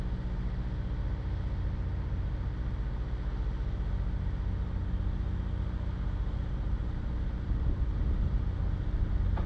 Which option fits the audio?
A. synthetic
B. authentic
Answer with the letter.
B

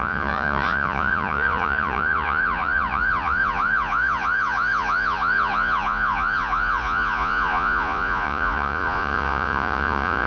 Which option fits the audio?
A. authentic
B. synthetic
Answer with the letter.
B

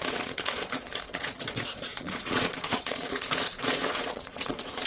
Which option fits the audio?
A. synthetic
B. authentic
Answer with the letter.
A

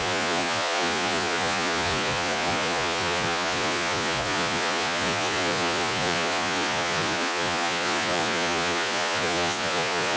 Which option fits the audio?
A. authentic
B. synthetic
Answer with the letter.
B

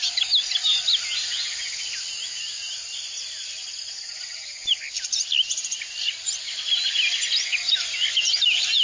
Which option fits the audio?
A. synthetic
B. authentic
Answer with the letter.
B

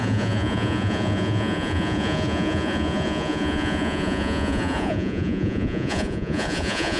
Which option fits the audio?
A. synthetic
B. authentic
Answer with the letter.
A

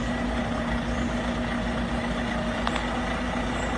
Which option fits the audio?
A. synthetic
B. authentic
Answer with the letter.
B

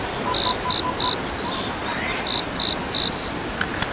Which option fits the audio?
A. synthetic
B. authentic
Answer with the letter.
B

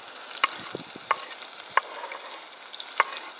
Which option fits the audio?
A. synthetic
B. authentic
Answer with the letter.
B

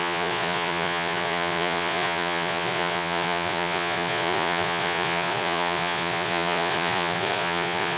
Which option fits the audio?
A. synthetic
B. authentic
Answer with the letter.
A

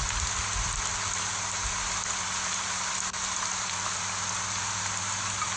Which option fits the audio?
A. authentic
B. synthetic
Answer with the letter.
A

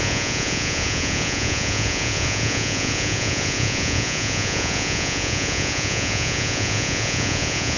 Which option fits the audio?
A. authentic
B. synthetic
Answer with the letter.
B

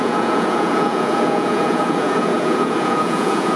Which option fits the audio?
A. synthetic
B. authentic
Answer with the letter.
A